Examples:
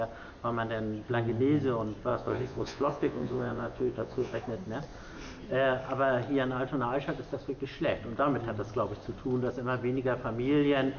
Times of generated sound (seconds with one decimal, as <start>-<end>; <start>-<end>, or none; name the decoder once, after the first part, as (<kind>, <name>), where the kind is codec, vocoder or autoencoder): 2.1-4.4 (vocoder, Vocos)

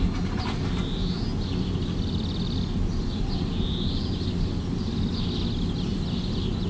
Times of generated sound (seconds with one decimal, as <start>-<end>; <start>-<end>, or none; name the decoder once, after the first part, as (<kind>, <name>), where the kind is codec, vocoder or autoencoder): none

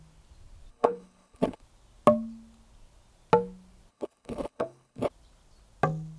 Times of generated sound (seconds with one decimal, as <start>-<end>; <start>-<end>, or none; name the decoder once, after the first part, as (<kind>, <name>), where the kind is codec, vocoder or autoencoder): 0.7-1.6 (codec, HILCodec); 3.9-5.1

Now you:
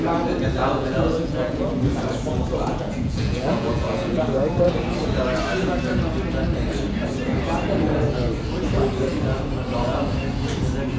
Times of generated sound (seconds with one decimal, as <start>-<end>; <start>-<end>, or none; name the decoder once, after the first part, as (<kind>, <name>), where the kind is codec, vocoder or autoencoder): 0.6-1.7 (vocoder, Vocos); 2.7-4.2

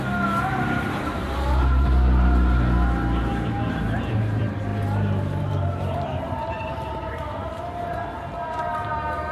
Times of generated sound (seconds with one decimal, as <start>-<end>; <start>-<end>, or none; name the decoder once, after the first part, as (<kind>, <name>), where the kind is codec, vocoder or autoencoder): 0.0-1.2 (vocoder, BigVGAN v2); 3.3-4.7; 5.4-7.4; 7.9-9.3